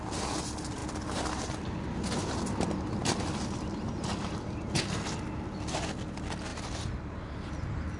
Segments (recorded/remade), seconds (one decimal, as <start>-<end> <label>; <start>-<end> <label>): 0.0-8.0 recorded